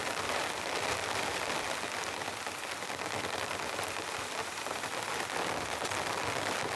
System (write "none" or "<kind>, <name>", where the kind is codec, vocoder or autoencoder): none